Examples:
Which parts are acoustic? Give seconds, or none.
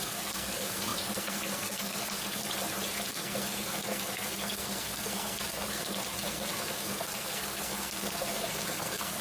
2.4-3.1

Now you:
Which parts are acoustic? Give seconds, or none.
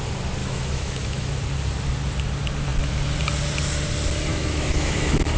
0.0-0.4; 1.3-4.3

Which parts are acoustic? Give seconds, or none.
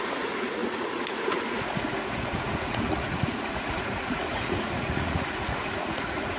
none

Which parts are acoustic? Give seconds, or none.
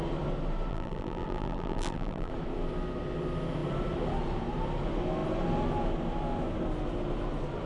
0.0-0.7; 2.3-7.7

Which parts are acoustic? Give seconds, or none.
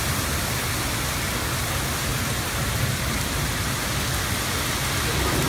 0.0-2.1; 3.8-5.5